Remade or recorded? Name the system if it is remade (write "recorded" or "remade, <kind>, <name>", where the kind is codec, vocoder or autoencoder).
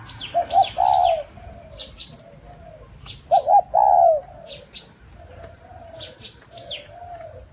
recorded